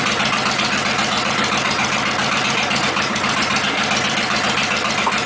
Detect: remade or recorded recorded